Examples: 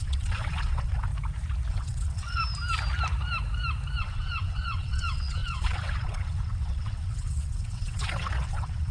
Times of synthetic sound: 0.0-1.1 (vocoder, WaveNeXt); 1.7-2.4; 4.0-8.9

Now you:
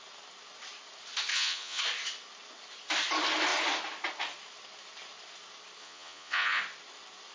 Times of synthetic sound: 1.3-1.8 (vocoder, Vocos); 5.8-6.6

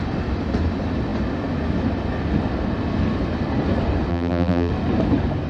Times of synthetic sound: 4.1-4.7 (vocoder, BigVGAN v2)

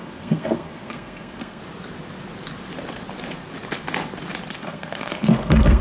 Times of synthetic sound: 0.0-1.6 (codec, SNAC); 4.6-5.8

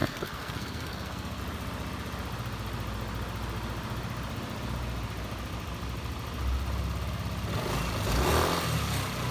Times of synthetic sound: 0.0-1.4 (codec, SNAC)